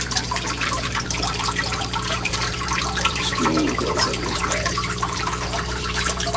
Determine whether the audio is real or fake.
fake